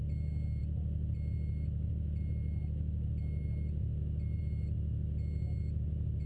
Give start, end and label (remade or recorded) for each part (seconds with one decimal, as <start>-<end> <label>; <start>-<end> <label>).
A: 0.0-6.3 recorded